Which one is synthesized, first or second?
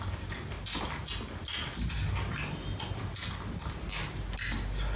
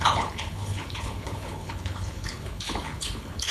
second